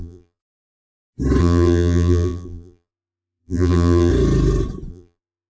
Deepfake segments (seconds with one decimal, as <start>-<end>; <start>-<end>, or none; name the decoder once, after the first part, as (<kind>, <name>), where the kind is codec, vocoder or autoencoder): 0.0-0.4 (vocoder, BigVGAN v2); 1.4-4.1; 4.9-5.5